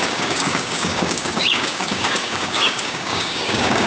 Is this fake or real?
fake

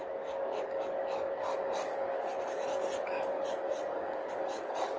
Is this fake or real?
fake